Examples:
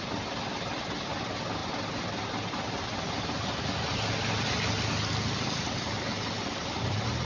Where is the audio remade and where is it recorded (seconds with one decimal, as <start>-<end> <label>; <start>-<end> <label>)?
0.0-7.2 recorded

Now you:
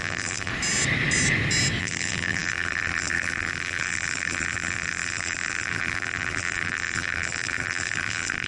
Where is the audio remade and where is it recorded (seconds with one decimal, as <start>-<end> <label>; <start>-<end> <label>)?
0.0-0.5 remade; 0.5-1.8 recorded; 1.8-8.5 remade

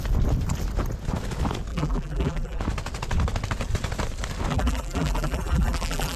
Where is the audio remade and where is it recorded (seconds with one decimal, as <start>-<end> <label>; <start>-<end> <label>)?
0.0-1.7 recorded; 1.7-2.6 remade; 2.6-4.5 recorded; 4.5-6.2 remade

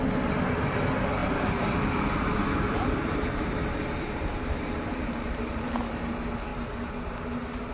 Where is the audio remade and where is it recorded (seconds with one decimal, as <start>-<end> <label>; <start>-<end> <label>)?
0.0-1.2 recorded; 1.2-5.8 remade; 5.8-7.7 recorded